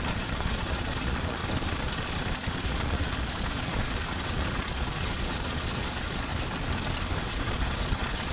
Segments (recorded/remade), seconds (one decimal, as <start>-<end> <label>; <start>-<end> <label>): 0.0-1.4 remade; 1.4-2.5 recorded; 2.5-6.3 remade; 6.3-7.2 recorded; 7.2-8.3 remade